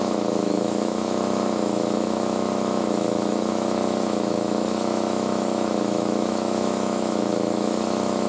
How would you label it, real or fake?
fake